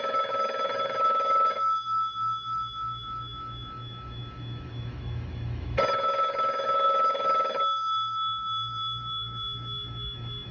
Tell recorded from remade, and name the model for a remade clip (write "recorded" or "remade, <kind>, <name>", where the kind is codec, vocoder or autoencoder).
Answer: remade, autoencoder, DAC-VAE